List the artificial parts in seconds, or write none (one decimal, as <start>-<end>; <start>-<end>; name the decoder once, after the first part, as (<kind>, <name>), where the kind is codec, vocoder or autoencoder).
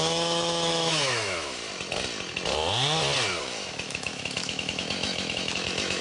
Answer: 0.0-1.6 (autoencoder, DAC-VAE); 3.4-6.0